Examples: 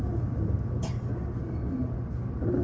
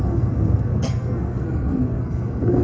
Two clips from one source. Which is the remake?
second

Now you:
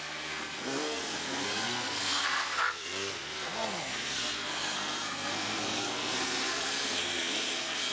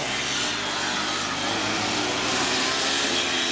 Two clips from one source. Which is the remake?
first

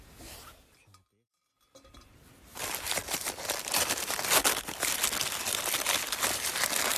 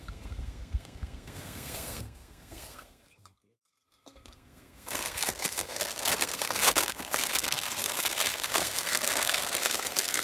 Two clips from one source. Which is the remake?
second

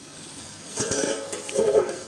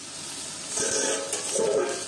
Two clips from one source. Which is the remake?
first